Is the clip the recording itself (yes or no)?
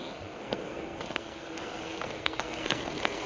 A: no